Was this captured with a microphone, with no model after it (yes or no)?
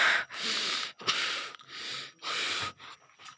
yes